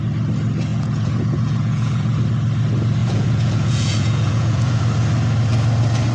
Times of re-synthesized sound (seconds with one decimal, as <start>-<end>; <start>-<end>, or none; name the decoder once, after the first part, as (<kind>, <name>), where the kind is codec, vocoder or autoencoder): 0.7-2.2 (vocoder, Vocos); 3.0-4.8